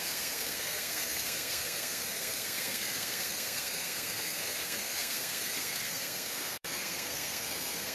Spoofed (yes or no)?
yes